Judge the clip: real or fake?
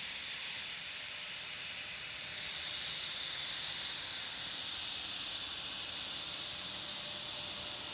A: real